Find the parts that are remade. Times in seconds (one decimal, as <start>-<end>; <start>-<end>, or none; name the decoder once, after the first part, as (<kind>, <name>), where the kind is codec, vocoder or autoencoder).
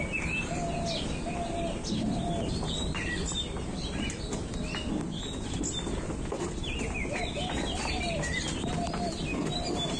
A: none